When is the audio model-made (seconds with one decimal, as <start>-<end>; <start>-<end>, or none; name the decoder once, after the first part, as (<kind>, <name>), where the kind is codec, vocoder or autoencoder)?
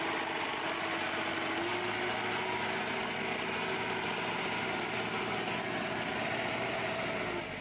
none